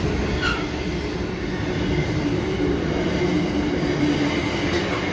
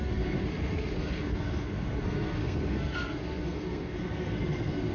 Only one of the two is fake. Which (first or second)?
second